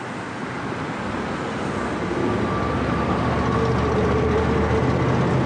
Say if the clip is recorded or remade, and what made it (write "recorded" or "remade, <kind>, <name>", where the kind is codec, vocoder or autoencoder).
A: recorded